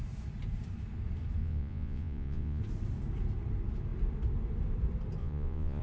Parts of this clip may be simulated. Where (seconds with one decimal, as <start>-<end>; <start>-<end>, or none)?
1.4-2.6; 5.2-5.8